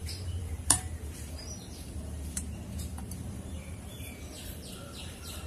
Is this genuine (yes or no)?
no